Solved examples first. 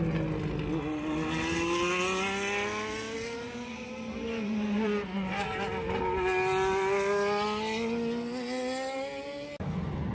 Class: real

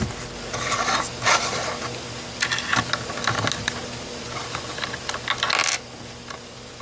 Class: real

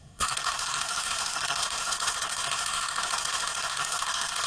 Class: fake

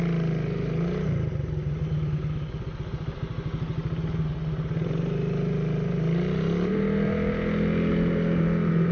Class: real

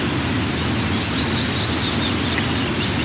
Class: real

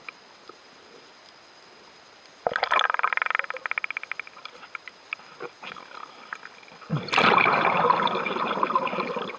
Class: real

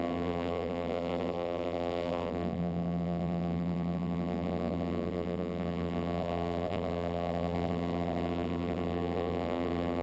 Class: fake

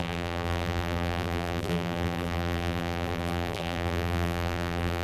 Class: fake